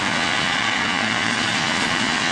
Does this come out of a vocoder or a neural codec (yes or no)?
yes